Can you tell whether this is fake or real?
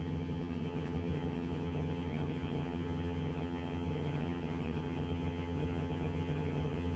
fake